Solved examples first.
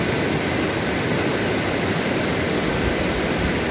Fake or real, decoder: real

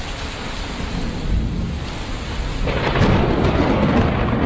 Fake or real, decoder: real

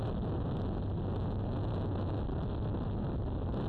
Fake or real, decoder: real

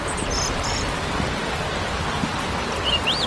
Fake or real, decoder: real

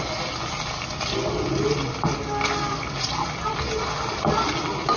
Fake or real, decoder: real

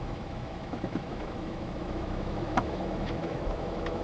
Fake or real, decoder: fake, autoencoder, DAC-VAE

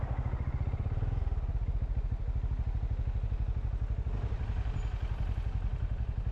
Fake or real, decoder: real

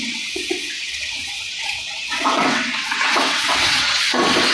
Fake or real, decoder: fake, vocoder, WaveNeXt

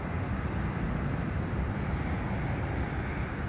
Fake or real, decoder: real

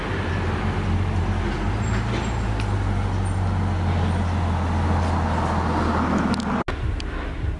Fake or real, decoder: real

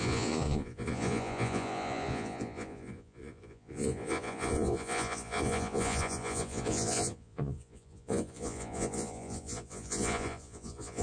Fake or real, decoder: fake, vocoder, Vocos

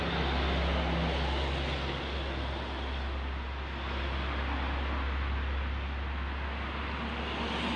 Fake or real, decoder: real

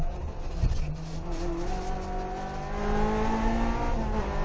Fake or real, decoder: real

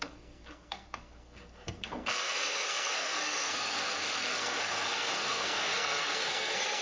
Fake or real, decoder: fake, codec, SNAC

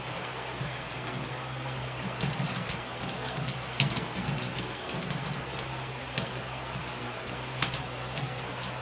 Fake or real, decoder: fake, codec, SNAC